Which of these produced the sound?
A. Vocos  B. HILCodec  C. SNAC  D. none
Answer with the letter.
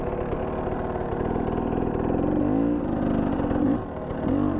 D